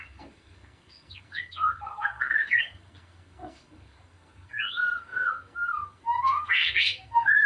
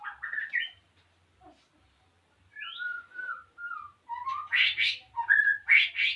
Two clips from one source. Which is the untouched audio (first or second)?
second